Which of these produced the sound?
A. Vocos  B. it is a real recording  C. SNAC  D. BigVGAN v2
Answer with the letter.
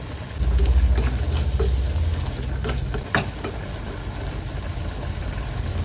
B